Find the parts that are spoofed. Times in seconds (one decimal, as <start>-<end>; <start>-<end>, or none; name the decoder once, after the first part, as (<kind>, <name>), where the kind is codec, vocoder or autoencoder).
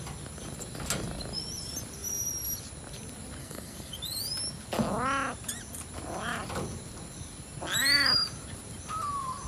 3.4-3.9 (codec, SNAC)